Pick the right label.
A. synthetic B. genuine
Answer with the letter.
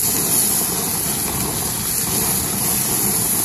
B